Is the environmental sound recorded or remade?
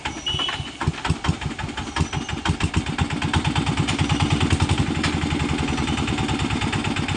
recorded